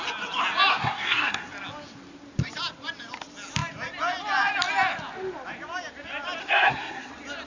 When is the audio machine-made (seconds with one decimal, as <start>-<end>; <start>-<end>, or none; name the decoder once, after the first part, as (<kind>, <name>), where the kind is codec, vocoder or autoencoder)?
0.7-1.5 (codec, SNAC); 6.4-7.1